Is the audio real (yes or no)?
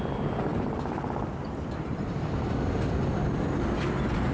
yes